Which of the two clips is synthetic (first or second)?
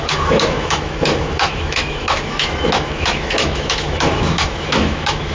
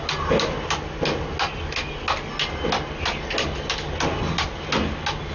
first